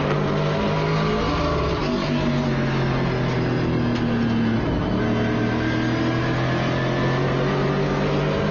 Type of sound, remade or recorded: recorded